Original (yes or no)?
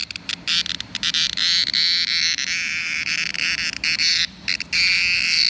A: yes